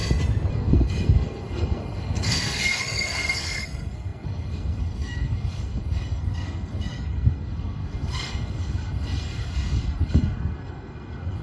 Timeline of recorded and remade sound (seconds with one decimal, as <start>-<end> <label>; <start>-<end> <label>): 0.0-0.5 recorded; 0.5-11.4 remade